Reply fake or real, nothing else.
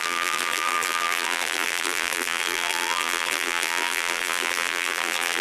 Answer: fake